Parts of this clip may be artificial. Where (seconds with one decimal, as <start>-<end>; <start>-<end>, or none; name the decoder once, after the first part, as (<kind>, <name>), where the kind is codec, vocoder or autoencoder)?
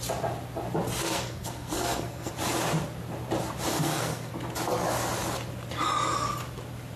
1.0-2.3 (codec, SNAC); 3.7-4.3